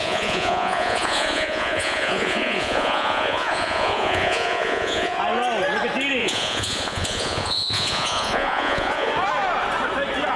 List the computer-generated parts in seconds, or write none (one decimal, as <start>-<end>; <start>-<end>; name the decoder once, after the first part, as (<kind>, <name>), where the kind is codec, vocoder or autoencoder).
0.0-5.2 (vocoder, Vocos); 6.2-9.1